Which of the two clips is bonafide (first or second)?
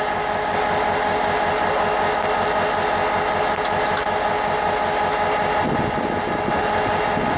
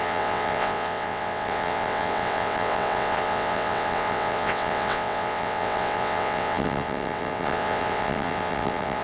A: first